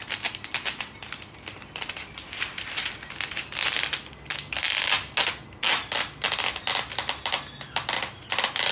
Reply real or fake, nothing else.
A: real